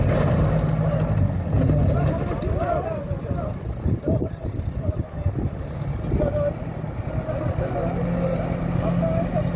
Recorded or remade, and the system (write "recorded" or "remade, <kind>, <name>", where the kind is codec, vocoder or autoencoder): recorded